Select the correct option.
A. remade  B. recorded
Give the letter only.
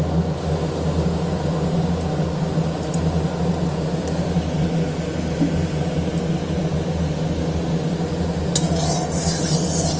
B